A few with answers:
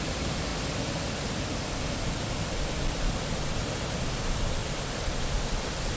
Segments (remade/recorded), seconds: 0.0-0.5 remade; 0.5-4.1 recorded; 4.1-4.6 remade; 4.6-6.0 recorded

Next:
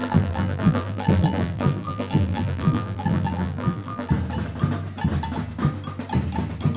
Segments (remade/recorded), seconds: 0.0-4.1 remade; 4.1-6.8 recorded